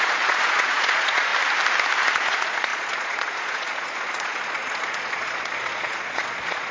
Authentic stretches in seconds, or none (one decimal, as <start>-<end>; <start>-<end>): 1.3-2.1